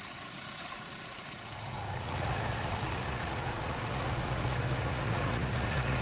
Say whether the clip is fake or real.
fake